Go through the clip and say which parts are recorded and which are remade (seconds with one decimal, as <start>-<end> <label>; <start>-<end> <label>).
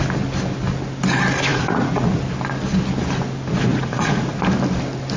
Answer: 0.0-1.5 recorded; 1.5-2.2 remade; 2.2-3.7 recorded; 3.7-4.4 remade; 4.4-5.2 recorded